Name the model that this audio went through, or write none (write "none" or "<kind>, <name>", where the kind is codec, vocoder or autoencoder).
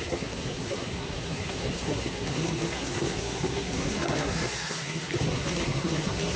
codec, SNAC